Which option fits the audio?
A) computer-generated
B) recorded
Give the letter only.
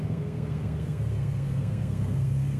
A